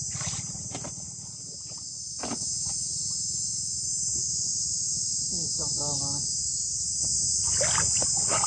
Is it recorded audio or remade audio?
recorded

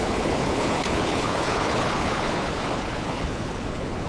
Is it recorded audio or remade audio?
remade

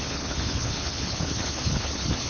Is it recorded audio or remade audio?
remade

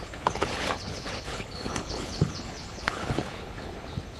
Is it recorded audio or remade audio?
remade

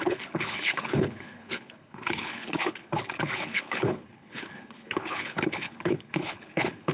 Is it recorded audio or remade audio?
remade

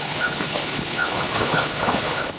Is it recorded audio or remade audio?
remade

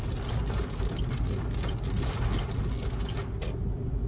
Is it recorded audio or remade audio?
recorded